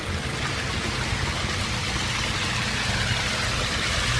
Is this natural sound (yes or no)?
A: yes